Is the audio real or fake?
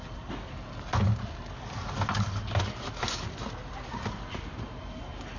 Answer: real